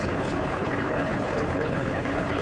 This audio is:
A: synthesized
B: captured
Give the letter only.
A